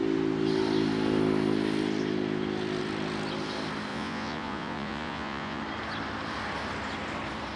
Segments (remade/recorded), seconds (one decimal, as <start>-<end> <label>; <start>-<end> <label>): 0.0-3.9 recorded; 3.9-5.6 remade; 5.6-7.6 recorded